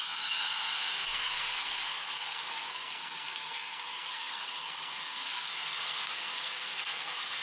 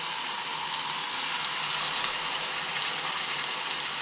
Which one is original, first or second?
second